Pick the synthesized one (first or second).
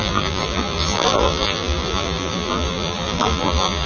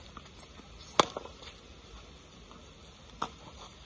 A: first